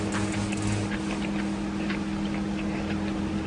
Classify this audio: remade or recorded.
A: recorded